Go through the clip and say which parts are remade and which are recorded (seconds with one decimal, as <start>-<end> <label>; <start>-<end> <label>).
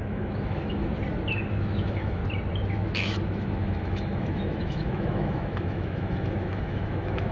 0.0-0.8 remade; 0.8-1.5 recorded; 1.5-2.2 remade; 2.2-2.7 recorded; 2.7-7.3 remade